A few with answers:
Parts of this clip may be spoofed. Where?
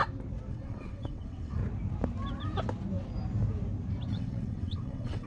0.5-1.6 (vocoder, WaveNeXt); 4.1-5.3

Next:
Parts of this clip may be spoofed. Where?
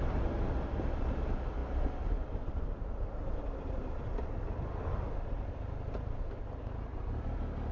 none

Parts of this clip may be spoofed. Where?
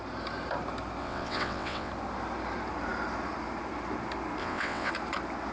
1.0-1.9 (vocoder, WaveNeXt); 4.4-4.9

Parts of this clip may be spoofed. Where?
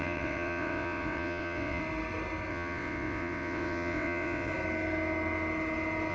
0.0-1.8 (vocoder, WaveNeXt); 2.5-4.5